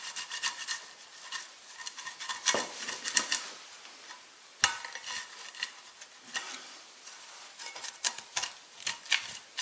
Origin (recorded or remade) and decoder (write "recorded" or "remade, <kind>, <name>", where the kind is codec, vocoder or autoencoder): recorded